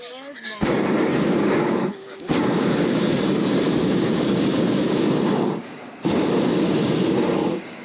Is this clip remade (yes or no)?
yes